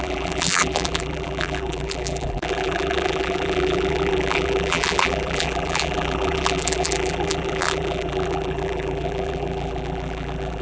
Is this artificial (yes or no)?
yes